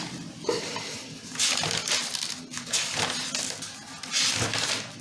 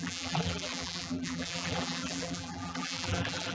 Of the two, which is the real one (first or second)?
first